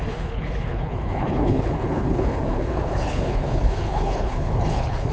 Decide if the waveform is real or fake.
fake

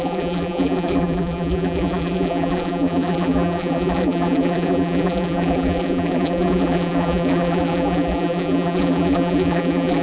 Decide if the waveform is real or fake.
fake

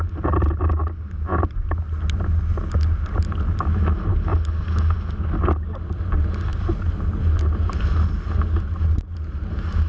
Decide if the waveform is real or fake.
real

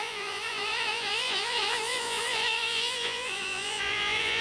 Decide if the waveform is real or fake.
fake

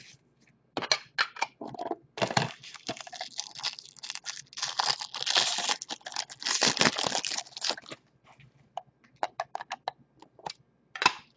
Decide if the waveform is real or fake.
real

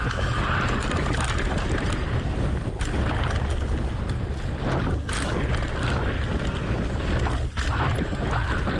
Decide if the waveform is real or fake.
real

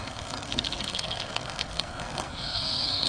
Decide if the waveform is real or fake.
fake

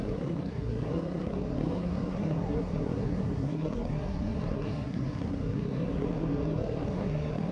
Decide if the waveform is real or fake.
fake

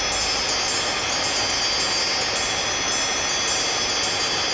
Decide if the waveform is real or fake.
real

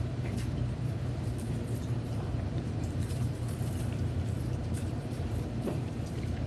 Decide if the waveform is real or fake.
fake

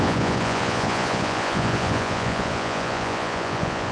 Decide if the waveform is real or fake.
fake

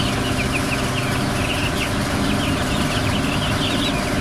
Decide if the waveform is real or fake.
real